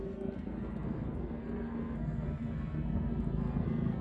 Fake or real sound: fake